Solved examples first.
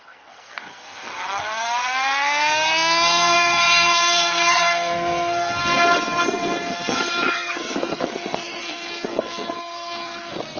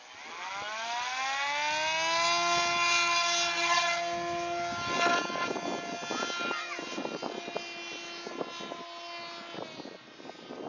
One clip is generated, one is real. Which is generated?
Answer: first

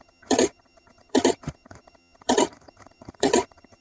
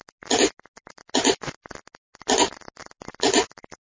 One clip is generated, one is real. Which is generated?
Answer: first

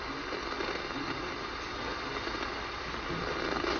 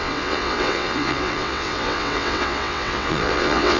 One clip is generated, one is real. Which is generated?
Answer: second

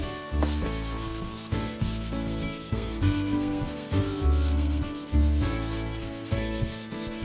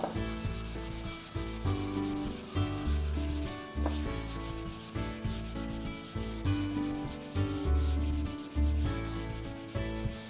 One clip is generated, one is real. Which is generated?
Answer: first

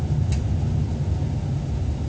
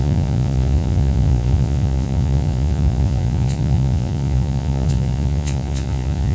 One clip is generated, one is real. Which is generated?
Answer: second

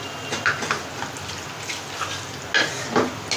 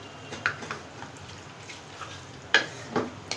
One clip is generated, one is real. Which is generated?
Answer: second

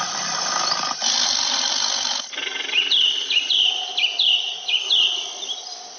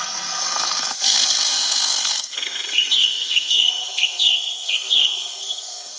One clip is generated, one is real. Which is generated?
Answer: second